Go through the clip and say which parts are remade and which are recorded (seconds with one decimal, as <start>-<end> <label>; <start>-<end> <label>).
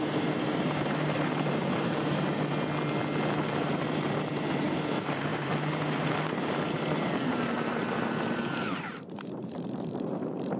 0.0-2.5 remade; 2.5-3.6 recorded; 3.6-10.6 remade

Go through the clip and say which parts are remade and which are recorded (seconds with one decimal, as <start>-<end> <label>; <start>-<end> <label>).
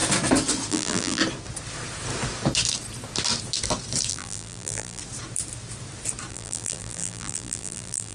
0.0-0.7 recorded; 0.7-1.2 remade; 1.2-4.1 recorded; 4.1-5.0 remade; 5.0-6.3 recorded; 6.3-8.1 remade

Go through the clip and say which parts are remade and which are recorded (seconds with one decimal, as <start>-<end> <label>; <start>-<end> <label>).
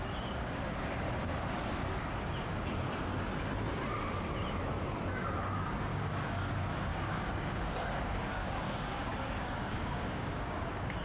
0.0-5.9 recorded; 5.9-6.5 remade; 6.5-6.9 recorded; 6.9-10.6 remade; 10.6-11.0 recorded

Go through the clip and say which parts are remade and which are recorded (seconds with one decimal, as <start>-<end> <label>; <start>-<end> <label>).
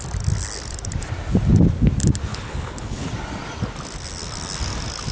0.0-2.3 recorded; 2.3-3.1 remade; 3.1-5.1 recorded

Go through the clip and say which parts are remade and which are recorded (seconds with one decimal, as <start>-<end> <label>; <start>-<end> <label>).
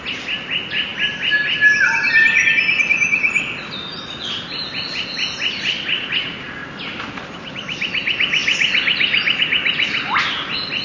0.0-10.8 recorded